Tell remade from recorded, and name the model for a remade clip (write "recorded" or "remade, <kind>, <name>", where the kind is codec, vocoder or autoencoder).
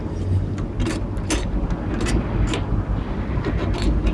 recorded